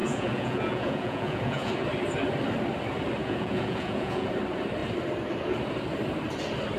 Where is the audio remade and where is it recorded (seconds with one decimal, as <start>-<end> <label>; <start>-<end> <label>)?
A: 0.0-1.7 remade; 1.7-3.2 recorded; 3.2-4.3 remade; 4.3-6.8 recorded